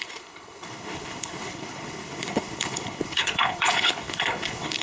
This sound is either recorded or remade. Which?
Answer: remade